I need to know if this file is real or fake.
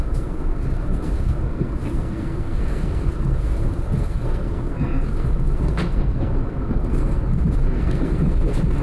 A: fake